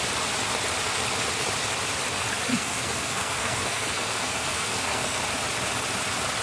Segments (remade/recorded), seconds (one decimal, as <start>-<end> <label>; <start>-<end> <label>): 0.0-2.5 recorded; 2.5-5.2 remade; 5.2-6.4 recorded